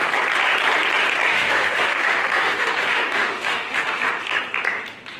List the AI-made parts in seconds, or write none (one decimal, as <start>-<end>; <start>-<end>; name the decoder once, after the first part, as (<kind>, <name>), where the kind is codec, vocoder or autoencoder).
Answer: 1.3-4.4 (autoencoder, DAC-VAE)